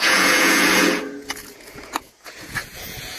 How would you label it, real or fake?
fake